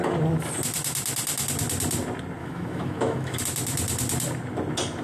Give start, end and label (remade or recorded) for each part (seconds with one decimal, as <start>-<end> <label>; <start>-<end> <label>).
0.0-2.4 recorded; 2.4-3.4 remade; 3.4-5.0 recorded